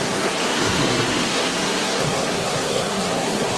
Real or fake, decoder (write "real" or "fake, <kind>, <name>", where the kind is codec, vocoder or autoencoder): fake, codec, SNAC